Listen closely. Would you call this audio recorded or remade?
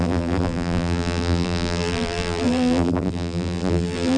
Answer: remade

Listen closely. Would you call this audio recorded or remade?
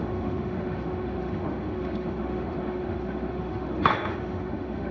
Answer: remade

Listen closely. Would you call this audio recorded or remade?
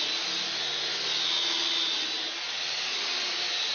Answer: recorded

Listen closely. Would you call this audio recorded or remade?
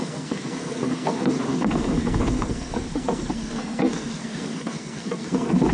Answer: remade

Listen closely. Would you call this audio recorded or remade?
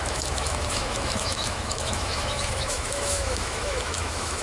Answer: remade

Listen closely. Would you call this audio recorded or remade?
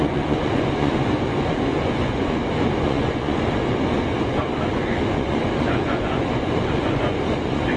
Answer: remade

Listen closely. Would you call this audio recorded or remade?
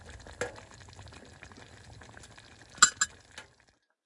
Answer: recorded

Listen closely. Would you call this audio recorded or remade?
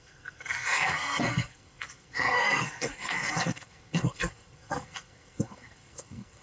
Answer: remade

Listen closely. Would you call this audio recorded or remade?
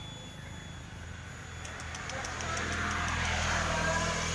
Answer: recorded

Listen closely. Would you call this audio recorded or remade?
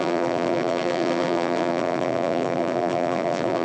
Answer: remade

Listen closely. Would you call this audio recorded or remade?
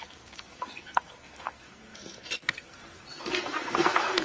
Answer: remade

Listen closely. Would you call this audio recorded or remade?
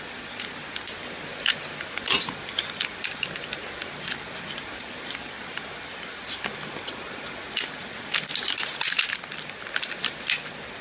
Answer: recorded